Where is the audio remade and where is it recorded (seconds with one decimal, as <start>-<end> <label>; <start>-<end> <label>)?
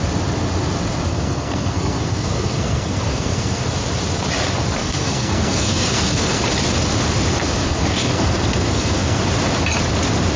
0.0-1.1 recorded; 1.1-3.6 remade; 3.6-4.8 recorded; 4.8-6.4 remade; 6.4-7.3 recorded; 7.3-9.2 remade; 9.2-10.4 recorded